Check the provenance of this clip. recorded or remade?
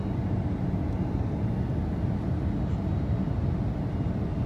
recorded